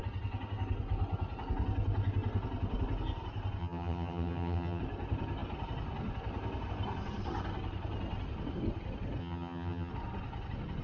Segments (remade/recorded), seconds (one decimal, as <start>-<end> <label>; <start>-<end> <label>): 0.0-3.6 recorded; 3.6-4.8 remade; 4.8-9.2 recorded; 9.2-9.9 remade; 9.9-10.8 recorded